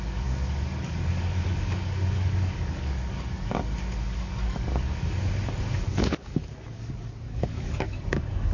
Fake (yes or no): yes